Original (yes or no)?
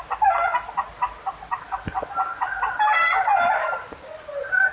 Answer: yes